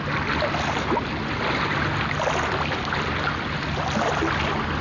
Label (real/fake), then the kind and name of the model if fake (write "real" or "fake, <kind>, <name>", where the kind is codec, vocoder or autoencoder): real